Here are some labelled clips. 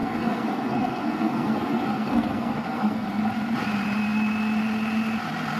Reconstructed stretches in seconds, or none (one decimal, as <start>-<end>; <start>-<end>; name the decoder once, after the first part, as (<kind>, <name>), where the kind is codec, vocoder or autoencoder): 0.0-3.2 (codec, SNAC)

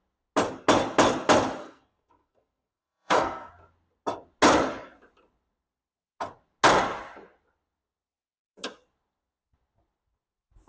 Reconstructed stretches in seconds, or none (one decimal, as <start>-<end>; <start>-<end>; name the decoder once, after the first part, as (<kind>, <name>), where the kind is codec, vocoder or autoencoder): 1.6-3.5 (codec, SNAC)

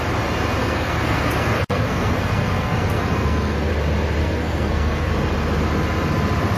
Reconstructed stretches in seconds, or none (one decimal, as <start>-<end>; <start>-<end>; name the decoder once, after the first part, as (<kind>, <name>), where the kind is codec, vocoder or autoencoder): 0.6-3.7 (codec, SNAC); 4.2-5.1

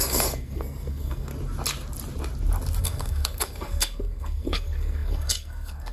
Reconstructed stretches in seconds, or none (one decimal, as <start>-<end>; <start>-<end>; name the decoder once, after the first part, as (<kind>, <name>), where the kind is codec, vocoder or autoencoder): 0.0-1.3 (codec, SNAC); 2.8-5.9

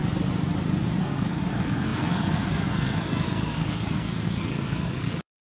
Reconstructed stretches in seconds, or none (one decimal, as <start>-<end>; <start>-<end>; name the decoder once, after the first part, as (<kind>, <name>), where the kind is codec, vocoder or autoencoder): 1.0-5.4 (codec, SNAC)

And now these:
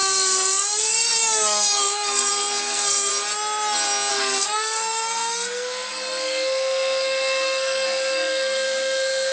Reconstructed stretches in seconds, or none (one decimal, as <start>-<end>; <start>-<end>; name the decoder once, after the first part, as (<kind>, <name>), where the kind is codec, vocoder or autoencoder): 0.0-3.1 (codec, SNAC); 4.1-9.3

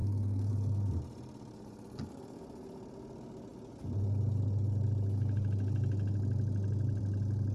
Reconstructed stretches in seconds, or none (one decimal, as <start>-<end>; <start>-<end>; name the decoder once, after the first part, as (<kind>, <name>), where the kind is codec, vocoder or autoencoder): 0.0-0.5 (codec, SNAC)